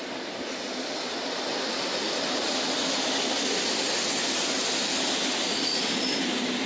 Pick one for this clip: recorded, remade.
recorded